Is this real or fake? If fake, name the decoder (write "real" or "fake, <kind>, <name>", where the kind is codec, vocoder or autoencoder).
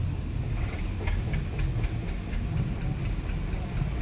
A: real